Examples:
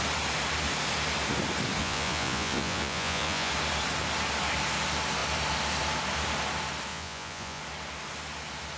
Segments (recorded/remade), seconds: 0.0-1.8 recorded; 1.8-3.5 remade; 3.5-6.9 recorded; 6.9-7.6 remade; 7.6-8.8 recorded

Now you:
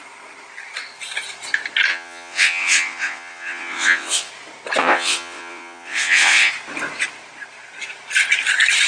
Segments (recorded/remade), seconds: 0.0-1.9 recorded; 1.9-4.3 remade; 4.3-4.8 recorded; 4.8-6.5 remade; 6.5-8.9 recorded